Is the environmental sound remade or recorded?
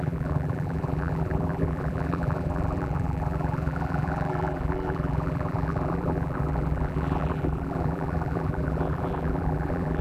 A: remade